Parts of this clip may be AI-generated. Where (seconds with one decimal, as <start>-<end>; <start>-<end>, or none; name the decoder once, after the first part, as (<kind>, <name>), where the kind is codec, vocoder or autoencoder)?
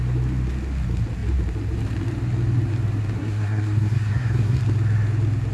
3.2-4.6 (codec, SNAC)